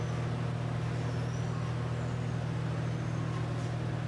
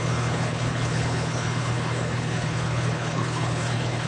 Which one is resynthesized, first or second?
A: second